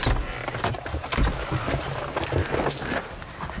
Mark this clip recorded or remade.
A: recorded